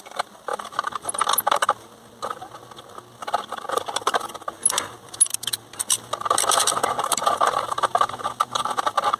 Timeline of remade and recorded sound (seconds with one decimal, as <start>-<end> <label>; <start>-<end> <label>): 0.0-9.2 recorded